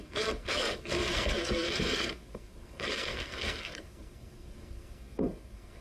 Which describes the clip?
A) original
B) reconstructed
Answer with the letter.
B